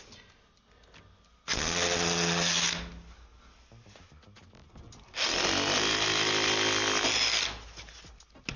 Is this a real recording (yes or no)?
yes